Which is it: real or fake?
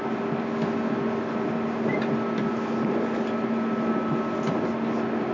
real